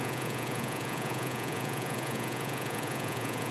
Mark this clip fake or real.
fake